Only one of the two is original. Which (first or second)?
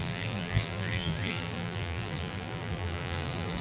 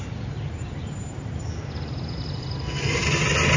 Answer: second